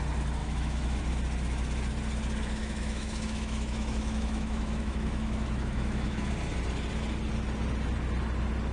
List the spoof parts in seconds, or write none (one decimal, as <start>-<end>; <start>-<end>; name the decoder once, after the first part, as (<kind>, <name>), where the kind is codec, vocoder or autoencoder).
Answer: 0.4-1.0 (autoencoder, DAC-VAE); 2.6-6.3